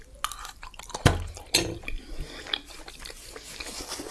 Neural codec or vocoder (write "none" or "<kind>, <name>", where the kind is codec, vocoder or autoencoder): none